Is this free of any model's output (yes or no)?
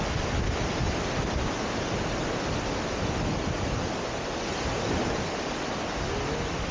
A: yes